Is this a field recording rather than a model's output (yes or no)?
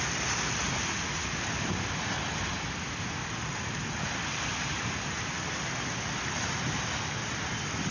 yes